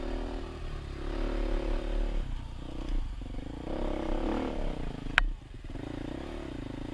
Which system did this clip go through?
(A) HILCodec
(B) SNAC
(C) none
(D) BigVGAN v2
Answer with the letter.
C